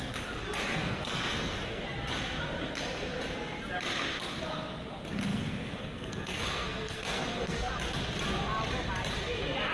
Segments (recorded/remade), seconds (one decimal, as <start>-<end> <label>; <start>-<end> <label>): 0.0-0.7 recorded; 0.7-1.8 remade; 1.8-5.3 recorded; 5.3-7.7 remade; 7.7-9.7 recorded